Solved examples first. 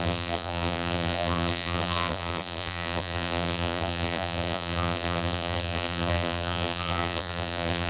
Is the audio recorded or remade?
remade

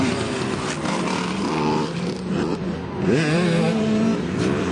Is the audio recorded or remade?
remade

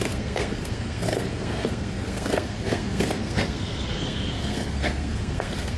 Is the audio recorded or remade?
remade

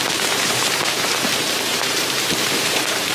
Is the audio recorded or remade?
remade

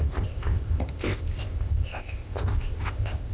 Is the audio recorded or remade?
remade